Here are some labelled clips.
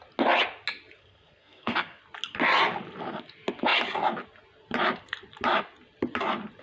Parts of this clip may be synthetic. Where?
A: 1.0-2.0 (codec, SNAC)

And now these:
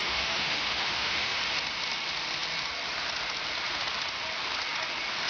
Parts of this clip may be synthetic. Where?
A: 0.0-1.4 (autoencoder, DAC-VAE)

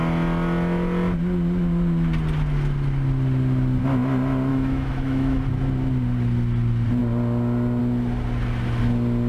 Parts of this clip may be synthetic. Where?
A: 4.5-5.4 (autoencoder, DAC-VAE)

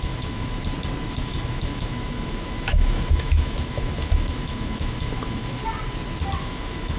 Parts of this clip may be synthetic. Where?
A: 0.0-0.6 (autoencoder, DAC-VAE); 1.2-5.6; 6.4-7.0

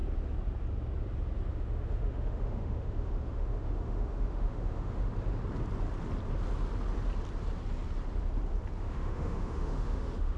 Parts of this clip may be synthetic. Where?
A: 1.5-5.1 (autoencoder, DAC-VAE); 8.8-10.4

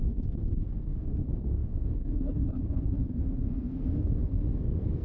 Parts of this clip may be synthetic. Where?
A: 0.0-5.0 (codec, SNAC)

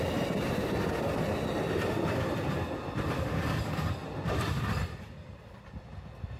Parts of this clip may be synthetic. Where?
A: none

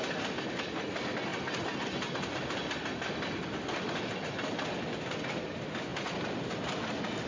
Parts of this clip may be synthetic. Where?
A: none